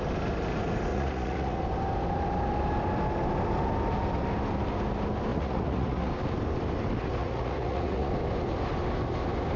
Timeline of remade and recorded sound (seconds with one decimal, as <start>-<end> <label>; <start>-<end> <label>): 0.0-0.9 recorded; 0.9-1.6 remade; 1.6-5.3 recorded; 5.3-6.1 remade; 6.1-7.2 recorded; 7.2-8.1 remade; 8.1-9.6 recorded